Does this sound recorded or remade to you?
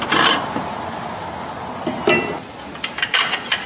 recorded